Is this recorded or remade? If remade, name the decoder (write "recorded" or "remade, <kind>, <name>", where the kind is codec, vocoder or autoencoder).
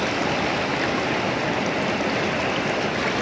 recorded